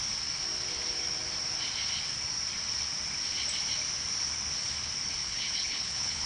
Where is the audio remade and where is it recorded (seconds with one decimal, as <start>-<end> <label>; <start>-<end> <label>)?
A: 0.0-5.2 recorded; 5.2-6.3 remade